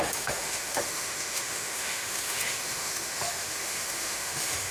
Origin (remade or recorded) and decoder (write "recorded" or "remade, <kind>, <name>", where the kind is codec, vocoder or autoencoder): remade, autoencoder, DAC-VAE